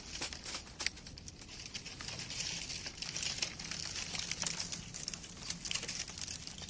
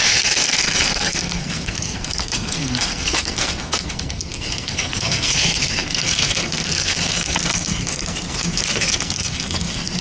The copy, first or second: second